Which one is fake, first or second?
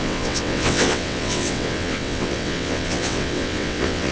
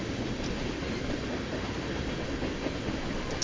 first